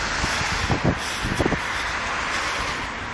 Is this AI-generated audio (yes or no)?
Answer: no